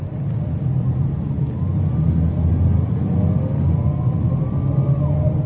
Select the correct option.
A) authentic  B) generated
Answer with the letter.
A